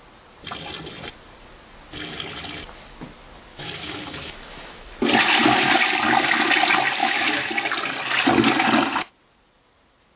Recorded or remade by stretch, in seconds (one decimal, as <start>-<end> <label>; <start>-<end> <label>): 0.0-3.5 recorded; 3.5-4.9 remade; 4.9-7.0 recorded; 7.0-7.5 remade; 7.5-10.2 recorded